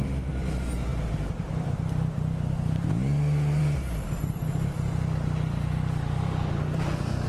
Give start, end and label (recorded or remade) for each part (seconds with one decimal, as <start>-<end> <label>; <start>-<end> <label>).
0.0-7.3 recorded